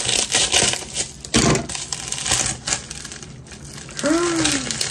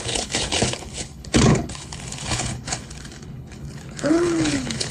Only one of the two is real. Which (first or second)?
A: first